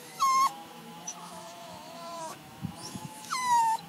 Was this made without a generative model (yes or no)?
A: no